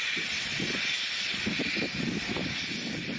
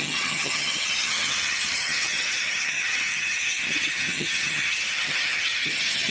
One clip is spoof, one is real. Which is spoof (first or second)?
second